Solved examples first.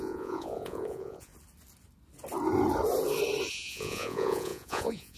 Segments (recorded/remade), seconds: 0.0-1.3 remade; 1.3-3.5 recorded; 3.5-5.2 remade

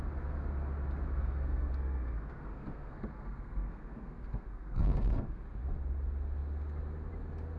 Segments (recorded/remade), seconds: 0.0-1.2 recorded; 1.2-5.4 remade; 5.4-7.6 recorded

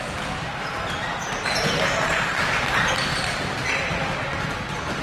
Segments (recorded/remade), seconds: 0.0-1.0 recorded; 1.0-3.3 remade; 3.3-5.0 recorded

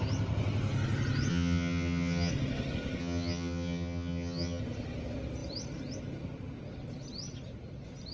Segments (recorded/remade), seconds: 0.0-1.3 recorded; 1.3-2.3 remade; 2.3-3.0 recorded; 3.0-4.6 remade; 4.6-8.1 recorded

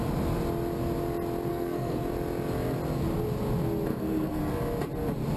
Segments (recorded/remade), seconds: 0.0-1.5 recorded; 1.5-2.1 remade; 2.1-3.9 recorded; 3.9-4.4 remade; 4.4-5.4 recorded

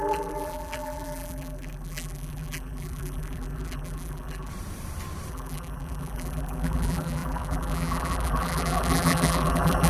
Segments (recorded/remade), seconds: 0.0-4.5 remade; 4.5-5.3 recorded; 5.3-9.9 remade